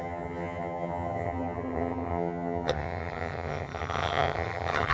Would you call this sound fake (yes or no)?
yes